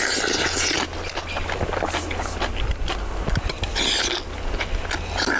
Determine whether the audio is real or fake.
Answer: real